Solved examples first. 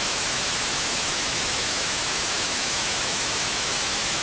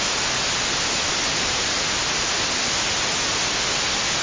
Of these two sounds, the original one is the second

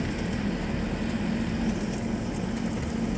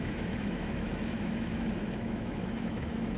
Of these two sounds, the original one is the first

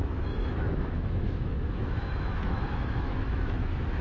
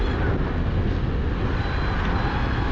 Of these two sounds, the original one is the second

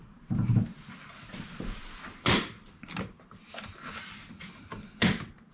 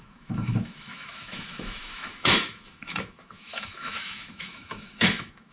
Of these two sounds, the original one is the first